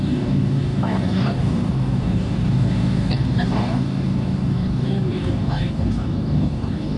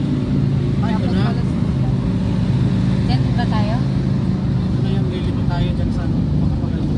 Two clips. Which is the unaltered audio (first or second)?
second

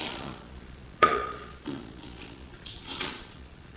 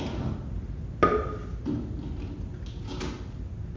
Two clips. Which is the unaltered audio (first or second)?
second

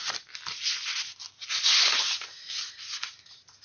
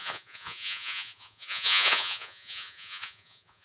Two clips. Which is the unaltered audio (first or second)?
first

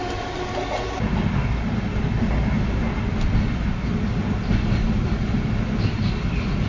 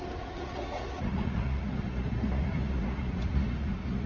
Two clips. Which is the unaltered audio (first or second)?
first